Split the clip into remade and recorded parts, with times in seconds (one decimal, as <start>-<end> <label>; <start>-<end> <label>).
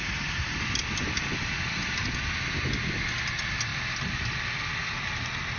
0.0-0.6 remade; 0.6-5.6 recorded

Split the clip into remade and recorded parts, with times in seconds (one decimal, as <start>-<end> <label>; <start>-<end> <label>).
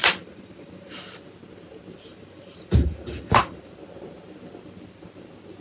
0.0-1.0 remade; 1.0-2.1 recorded; 2.1-3.7 remade; 3.7-5.6 recorded